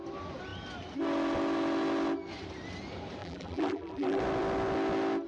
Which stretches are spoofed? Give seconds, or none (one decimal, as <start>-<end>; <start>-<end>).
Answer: 3.2-4.2